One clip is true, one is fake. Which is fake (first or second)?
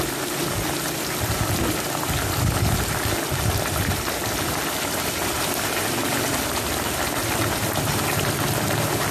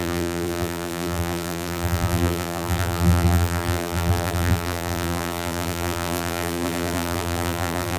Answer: second